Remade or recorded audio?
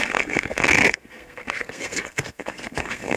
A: remade